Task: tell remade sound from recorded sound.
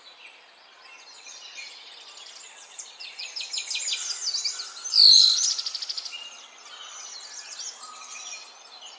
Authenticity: recorded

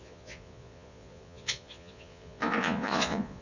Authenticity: remade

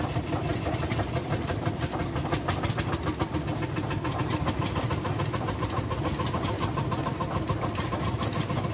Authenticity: recorded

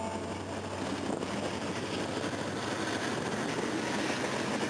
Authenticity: recorded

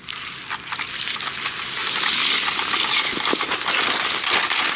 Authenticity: recorded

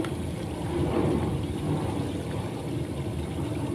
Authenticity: recorded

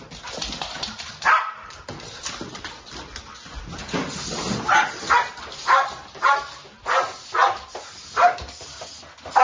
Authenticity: recorded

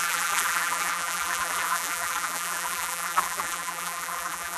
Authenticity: remade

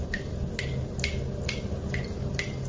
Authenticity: recorded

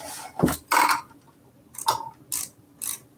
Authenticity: recorded